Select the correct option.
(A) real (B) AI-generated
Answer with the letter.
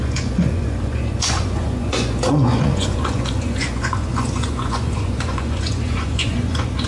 B